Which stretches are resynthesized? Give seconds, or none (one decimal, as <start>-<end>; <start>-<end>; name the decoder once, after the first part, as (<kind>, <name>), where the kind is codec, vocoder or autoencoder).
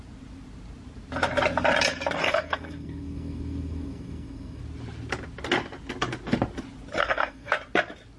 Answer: 2.2-4.6 (codec, SNAC); 7.0-7.5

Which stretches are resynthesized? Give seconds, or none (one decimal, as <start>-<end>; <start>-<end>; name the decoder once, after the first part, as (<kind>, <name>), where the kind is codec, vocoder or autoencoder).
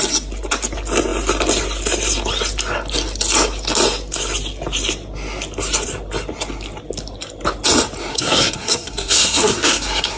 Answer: 8.1-10.2 (codec, SNAC)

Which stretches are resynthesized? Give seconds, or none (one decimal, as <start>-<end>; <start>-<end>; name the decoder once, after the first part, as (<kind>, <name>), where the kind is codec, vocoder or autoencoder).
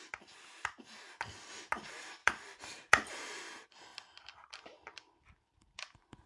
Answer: 2.2-3.1 (vocoder, BigVGAN v2); 3.9-6.3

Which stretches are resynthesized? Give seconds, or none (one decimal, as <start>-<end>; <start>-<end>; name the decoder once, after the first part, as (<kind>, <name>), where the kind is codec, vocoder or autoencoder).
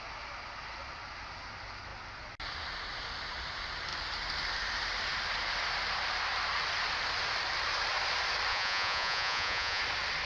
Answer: 8.5-9.8 (vocoder, Vocos)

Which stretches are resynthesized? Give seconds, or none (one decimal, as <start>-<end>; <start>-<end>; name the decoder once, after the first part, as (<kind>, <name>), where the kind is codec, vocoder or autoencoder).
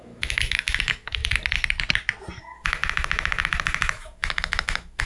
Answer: 0.0-1.2 (autoencoder, DAC-VAE); 2.4-5.1